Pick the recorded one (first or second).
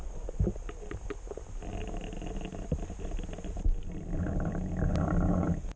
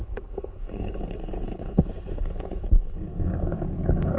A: first